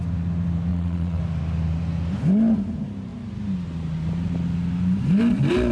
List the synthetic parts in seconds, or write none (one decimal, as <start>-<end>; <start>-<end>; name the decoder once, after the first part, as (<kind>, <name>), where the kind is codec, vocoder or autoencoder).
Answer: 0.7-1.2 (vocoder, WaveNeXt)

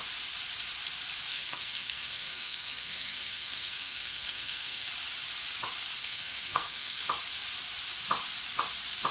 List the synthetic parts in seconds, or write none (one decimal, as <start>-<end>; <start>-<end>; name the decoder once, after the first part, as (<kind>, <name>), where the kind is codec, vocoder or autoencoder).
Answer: 1.3-4.9 (codec, SNAC); 6.0-7.0

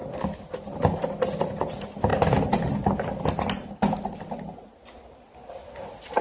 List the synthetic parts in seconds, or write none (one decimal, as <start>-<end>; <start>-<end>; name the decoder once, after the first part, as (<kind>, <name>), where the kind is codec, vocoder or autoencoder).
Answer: none

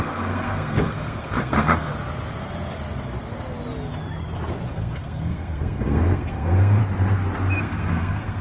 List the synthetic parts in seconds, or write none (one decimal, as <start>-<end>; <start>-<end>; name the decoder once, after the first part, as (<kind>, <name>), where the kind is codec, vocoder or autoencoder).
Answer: 0.0-1.9 (codec, SNAC); 4.7-6.8; 7.6-8.4